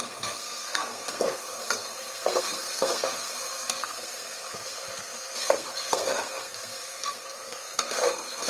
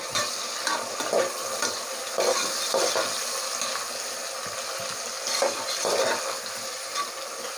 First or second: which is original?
second